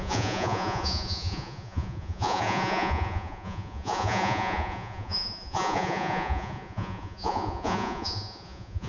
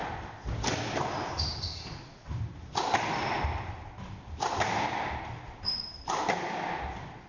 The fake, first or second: first